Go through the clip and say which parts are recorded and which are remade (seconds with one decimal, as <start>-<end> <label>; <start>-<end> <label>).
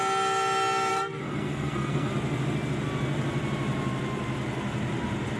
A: 0.0-0.9 recorded; 0.9-2.1 remade; 2.1-5.4 recorded